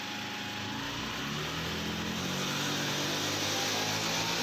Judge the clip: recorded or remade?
recorded